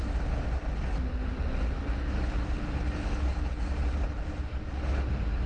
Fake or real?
real